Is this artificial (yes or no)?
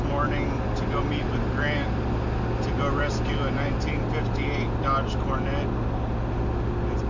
no